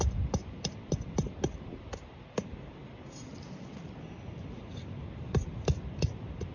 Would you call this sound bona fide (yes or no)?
yes